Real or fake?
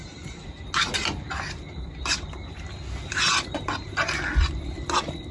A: real